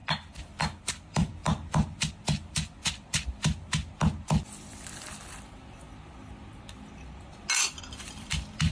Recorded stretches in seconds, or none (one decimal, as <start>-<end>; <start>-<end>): 0.0-0.9; 2.8-7.8